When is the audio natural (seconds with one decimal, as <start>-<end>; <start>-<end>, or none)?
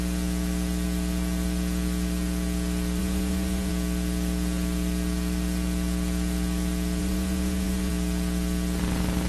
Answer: 0.0-3.0; 3.7-7.0; 7.9-9.3